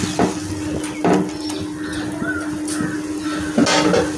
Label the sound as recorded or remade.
recorded